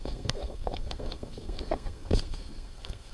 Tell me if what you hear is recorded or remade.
remade